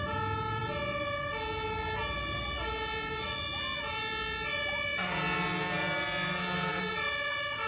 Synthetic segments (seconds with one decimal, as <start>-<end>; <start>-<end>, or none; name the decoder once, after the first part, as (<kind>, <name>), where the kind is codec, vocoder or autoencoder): none